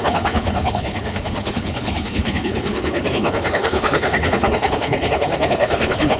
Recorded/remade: remade